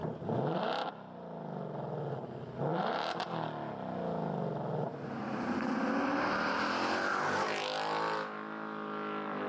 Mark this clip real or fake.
real